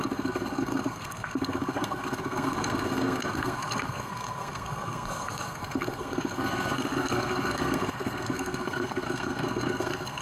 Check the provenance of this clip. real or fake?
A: fake